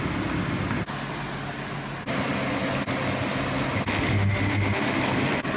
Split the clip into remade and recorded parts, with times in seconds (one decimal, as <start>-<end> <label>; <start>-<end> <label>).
0.0-4.1 recorded; 4.1-5.0 remade; 5.0-5.6 recorded